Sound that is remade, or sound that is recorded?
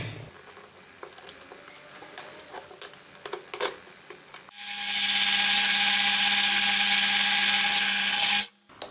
recorded